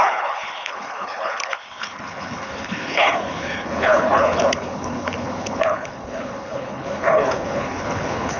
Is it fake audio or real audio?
fake